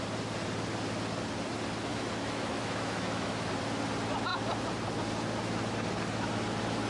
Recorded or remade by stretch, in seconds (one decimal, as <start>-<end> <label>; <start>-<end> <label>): 0.0-1.9 recorded; 1.9-3.5 remade; 3.5-6.9 recorded